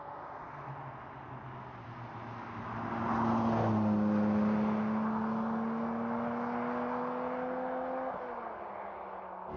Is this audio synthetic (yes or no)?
no